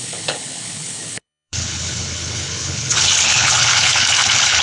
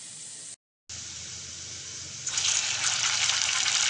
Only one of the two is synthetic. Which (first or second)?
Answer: first